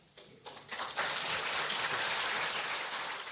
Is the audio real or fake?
real